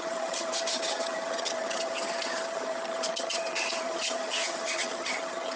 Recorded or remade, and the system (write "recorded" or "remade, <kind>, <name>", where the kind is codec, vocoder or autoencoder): remade, vocoder, HiFi-GAN